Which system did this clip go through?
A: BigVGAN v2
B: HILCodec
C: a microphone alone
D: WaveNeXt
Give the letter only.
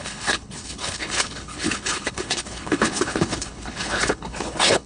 B